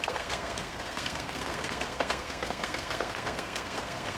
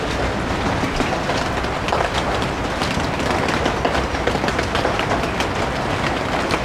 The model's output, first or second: first